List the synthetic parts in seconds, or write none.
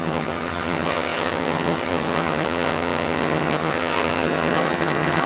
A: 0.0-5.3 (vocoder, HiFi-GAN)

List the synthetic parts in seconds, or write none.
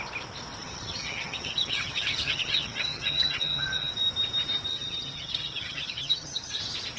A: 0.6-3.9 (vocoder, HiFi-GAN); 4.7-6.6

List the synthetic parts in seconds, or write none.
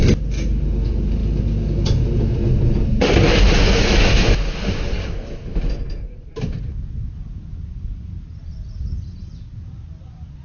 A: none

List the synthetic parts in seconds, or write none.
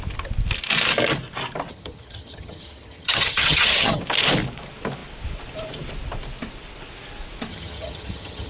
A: 1.7-4.0 (vocoder, HiFi-GAN); 7.5-8.5